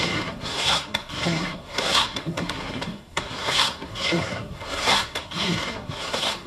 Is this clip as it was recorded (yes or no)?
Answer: no